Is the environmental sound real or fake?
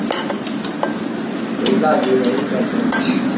real